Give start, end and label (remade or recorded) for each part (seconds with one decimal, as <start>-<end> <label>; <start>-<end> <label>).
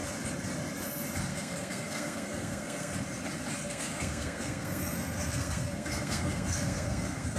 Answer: 0.0-1.3 recorded; 1.3-2.9 remade; 2.9-3.7 recorded; 3.7-7.4 remade